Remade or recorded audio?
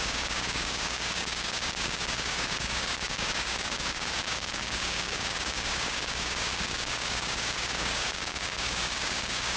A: remade